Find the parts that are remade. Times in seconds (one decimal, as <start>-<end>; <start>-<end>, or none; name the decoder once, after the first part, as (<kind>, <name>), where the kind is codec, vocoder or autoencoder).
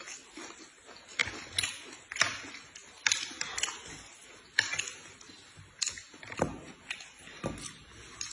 none